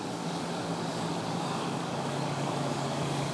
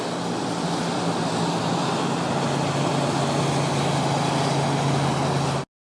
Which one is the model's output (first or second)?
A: first